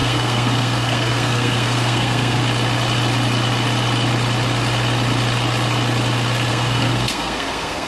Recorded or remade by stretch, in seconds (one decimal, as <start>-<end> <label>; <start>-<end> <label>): 0.0-2.4 remade; 2.4-6.5 recorded; 6.5-7.9 remade